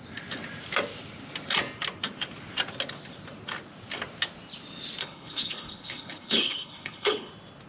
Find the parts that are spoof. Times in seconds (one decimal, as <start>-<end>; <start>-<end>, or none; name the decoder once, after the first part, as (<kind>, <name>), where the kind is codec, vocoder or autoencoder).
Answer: 5.0-7.3 (codec, HILCodec)